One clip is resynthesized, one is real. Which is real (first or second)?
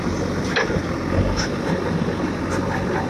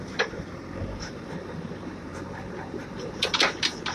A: first